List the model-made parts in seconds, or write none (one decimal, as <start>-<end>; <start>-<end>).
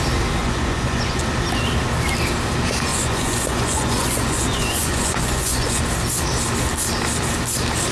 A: 0.4-1.2; 2.9-5.8